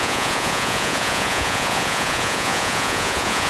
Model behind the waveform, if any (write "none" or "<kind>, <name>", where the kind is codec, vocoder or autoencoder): vocoder, Vocos